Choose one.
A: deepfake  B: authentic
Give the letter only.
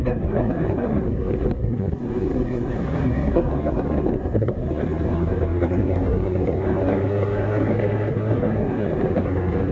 A